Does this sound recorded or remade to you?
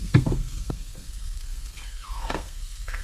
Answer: remade